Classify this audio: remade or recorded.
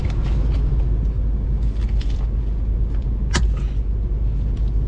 recorded